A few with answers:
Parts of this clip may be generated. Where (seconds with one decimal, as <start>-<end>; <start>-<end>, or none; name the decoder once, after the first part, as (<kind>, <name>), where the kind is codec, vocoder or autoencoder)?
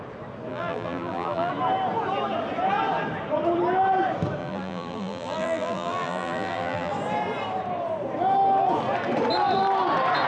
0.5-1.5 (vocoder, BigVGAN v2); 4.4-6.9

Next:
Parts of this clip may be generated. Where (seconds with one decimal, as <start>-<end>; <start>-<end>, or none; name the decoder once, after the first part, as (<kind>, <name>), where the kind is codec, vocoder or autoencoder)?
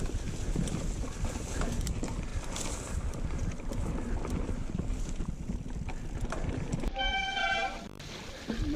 7.4-8.3 (vocoder, BigVGAN v2)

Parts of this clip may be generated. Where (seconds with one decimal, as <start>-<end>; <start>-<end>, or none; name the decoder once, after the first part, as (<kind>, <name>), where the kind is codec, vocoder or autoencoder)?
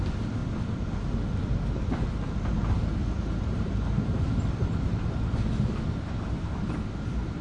0.0-0.4 (vocoder, BigVGAN v2); 1.1-3.0; 4.4-7.4